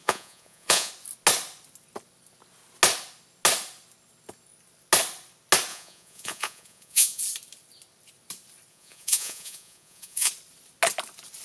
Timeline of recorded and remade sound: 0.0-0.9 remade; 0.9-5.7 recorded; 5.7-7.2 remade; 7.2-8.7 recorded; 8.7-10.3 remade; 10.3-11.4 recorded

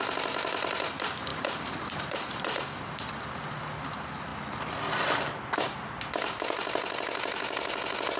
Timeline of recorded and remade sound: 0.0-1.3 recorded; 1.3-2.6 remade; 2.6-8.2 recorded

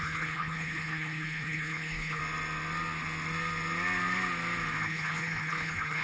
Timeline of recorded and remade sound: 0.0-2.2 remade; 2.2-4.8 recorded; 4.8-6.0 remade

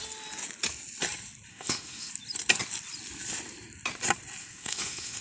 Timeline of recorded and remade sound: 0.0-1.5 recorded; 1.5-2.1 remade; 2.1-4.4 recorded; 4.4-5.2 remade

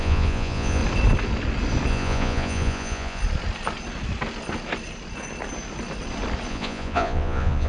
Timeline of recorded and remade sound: 0.0-0.8 remade; 0.8-1.9 recorded; 1.9-3.2 remade; 3.2-6.5 recorded; 6.5-7.7 remade